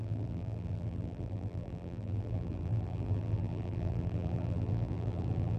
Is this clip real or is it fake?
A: fake